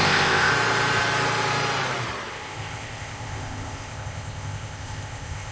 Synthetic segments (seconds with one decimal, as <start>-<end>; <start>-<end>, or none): 0.0-0.5; 2.3-5.5